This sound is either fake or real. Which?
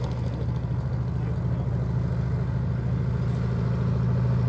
real